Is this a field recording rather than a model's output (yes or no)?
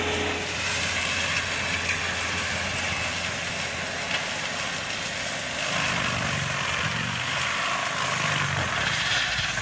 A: yes